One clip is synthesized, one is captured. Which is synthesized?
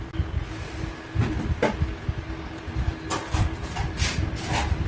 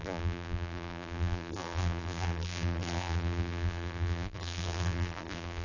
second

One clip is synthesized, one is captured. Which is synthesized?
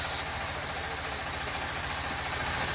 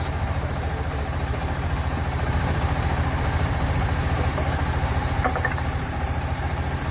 second